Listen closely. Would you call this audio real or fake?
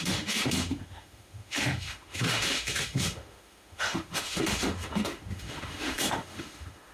fake